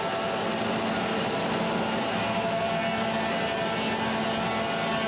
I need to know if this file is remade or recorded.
recorded